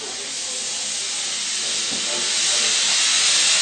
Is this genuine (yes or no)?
yes